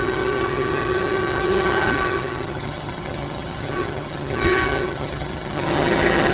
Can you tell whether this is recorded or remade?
remade